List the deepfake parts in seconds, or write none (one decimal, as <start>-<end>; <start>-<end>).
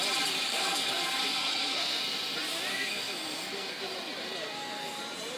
0.5-2.0; 2.7-3.8; 4.4-5.0